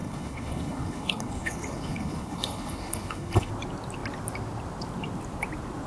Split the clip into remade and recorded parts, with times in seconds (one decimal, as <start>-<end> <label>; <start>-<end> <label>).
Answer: 0.0-3.5 remade; 3.5-5.9 recorded